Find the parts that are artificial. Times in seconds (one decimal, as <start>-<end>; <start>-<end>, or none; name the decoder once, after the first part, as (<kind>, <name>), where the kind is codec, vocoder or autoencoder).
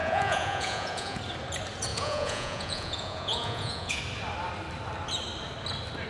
0.0-1.2 (vocoder, Vocos); 1.9-4.0